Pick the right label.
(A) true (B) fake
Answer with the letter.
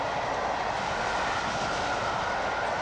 A